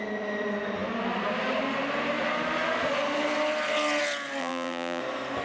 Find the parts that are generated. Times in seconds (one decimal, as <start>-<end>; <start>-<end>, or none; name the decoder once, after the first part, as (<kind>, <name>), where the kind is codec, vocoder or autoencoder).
4.4-5.0 (vocoder, BigVGAN v2)